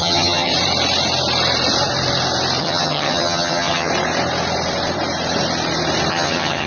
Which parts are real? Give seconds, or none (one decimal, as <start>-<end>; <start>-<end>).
0.5-2.6; 3.9-6.1